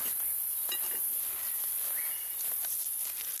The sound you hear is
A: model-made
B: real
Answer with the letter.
B